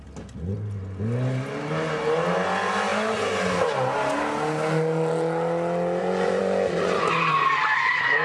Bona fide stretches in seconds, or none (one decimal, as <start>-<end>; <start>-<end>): 0.0-6.0; 7.3-8.2